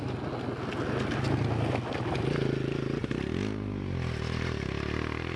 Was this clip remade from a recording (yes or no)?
no